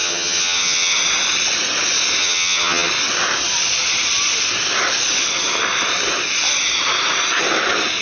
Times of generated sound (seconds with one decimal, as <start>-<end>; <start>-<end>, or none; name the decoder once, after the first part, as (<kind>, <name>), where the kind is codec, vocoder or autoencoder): 0.0-1.0 (vocoder, HiFi-GAN); 2.2-2.9